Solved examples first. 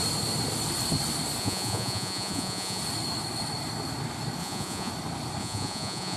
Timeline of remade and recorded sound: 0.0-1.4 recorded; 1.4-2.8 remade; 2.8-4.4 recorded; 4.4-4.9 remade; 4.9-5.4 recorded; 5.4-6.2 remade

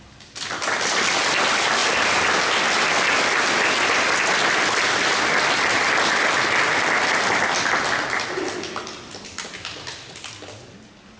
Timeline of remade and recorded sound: 0.0-11.2 recorded

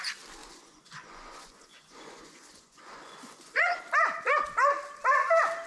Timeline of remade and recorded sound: 0.0-0.4 recorded; 0.4-3.8 remade; 3.8-5.7 recorded

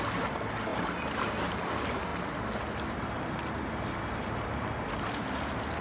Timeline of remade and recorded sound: 0.0-5.8 recorded

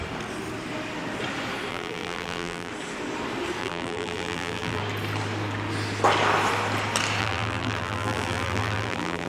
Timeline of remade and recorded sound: 0.0-1.7 recorded; 1.7-2.7 remade; 2.7-3.6 recorded; 3.6-4.8 remade; 4.8-7.2 recorded; 7.2-9.3 remade